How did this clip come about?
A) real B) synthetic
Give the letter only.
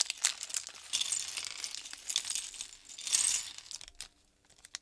A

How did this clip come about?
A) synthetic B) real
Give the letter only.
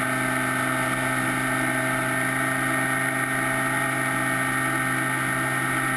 B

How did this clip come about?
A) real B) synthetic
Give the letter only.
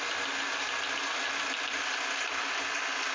A